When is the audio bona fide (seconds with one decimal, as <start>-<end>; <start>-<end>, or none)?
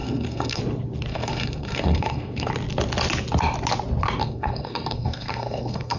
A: 0.6-1.1; 2.5-4.2